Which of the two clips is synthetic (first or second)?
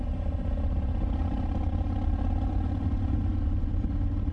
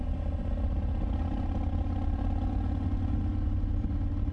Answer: first